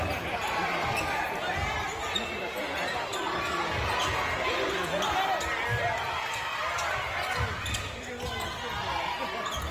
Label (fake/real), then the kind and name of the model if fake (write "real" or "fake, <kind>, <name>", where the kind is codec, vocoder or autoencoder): real